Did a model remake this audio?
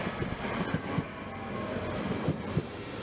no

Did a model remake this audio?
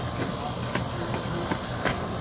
no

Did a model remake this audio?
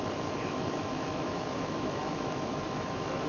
yes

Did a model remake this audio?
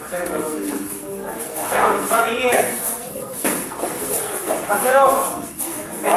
yes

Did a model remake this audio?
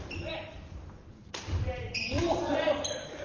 yes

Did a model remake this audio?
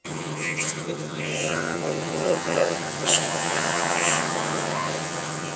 yes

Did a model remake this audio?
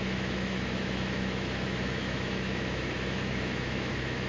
yes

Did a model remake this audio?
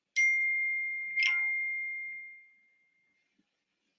no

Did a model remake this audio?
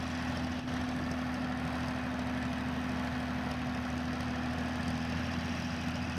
no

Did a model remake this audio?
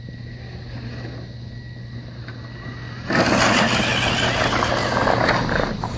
no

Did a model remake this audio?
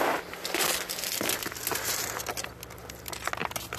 no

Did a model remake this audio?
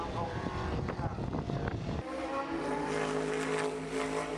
no